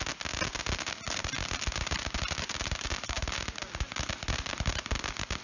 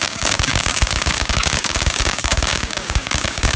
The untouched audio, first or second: first